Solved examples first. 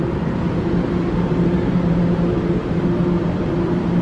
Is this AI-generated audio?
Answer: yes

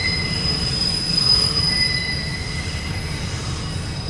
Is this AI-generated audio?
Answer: yes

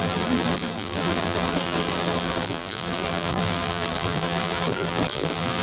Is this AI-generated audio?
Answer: yes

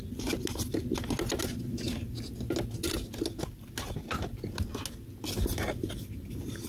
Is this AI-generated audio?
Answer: no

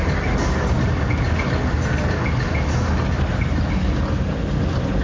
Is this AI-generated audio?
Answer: no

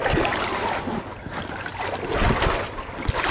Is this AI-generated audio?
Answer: no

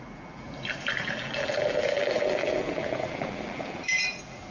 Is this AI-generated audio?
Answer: yes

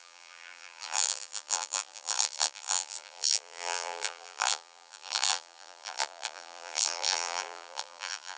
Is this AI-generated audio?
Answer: yes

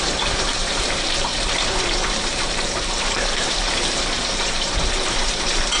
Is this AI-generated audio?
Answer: yes